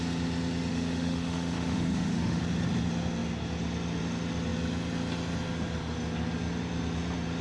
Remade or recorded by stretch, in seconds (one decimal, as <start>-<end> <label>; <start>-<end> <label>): 0.0-0.7 recorded; 0.7-2.4 remade; 2.4-7.4 recorded